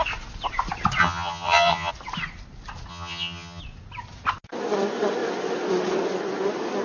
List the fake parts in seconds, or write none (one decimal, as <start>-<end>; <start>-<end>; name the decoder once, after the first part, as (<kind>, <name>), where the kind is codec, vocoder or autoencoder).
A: 1.0-1.9 (vocoder, HiFi-GAN); 2.9-3.6